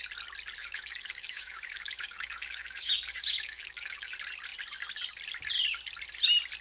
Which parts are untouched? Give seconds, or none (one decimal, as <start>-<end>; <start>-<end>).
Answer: 0.0-0.6; 4.1-6.6